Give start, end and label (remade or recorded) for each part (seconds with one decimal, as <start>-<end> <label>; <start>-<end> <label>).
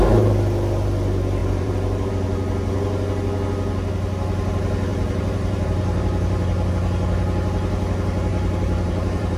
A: 0.0-1.4 recorded; 1.4-2.1 remade; 2.1-4.9 recorded; 4.9-6.7 remade; 6.7-8.3 recorded; 8.3-9.4 remade